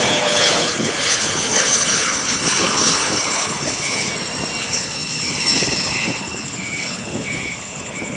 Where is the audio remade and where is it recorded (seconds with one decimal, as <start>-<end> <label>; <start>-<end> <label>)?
0.0-4.1 remade; 4.1-4.6 recorded; 4.6-8.2 remade